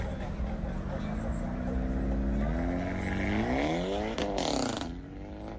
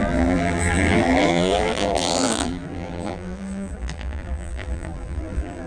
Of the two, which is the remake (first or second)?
second